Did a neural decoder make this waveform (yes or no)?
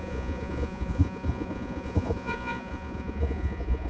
yes